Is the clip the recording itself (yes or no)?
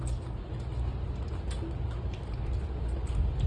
yes